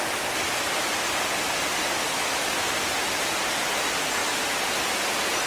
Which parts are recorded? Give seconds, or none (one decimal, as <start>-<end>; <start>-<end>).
0.0-4.2; 4.7-5.5